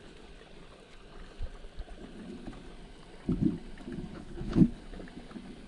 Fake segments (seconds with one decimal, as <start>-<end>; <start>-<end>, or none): 4.1-4.8